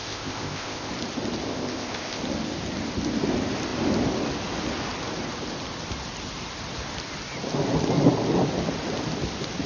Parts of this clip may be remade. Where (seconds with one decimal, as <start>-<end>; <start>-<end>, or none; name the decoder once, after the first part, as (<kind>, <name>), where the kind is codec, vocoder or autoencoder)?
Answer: 0.0-0.9 (codec, ZipCodec); 1.5-2.2